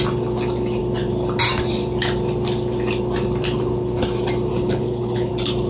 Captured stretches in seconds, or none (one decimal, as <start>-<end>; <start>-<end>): 0.0-4.5; 5.3-5.7